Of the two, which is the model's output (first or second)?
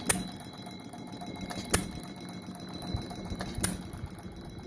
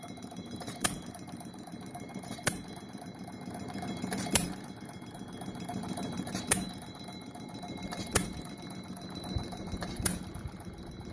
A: second